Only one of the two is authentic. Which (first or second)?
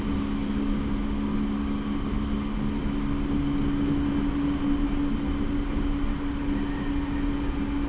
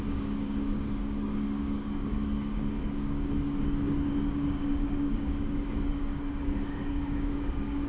first